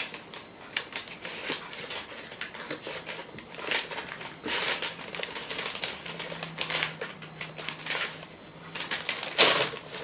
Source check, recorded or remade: recorded